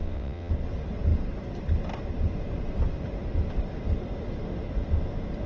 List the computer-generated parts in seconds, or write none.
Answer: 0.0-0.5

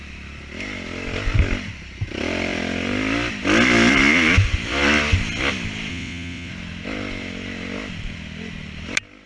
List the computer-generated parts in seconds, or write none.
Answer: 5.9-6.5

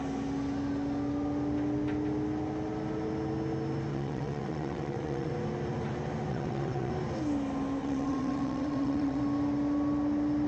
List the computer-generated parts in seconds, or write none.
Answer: 3.9-5.3; 6.3-6.9; 7.8-9.2